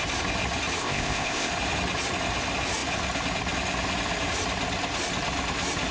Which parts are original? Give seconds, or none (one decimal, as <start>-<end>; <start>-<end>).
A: 0.0-0.8; 1.5-5.9